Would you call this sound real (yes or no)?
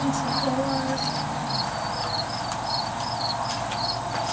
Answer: yes